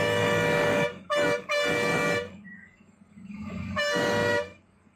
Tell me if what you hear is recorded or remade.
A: remade